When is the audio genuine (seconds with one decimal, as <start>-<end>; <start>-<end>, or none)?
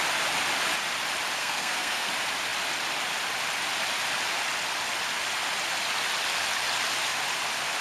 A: 0.0-1.4; 2.1-7.8